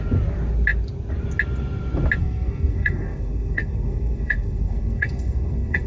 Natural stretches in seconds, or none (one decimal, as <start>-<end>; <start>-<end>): 0.0-2.2